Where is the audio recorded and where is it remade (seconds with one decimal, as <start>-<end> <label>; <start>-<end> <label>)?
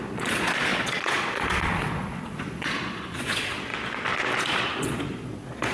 0.0-3.7 remade; 3.7-4.4 recorded; 4.4-5.7 remade